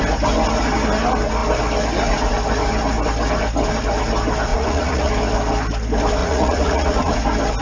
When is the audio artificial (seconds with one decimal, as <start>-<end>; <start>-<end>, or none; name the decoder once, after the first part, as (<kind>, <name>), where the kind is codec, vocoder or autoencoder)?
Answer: 4.5-5.1 (vocoder, Vocos); 6.2-7.1